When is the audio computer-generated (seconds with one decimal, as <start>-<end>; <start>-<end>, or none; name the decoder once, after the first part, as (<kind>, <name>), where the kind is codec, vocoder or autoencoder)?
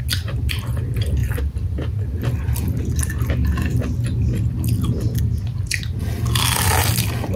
none